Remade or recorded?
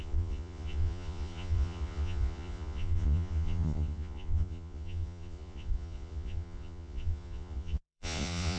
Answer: remade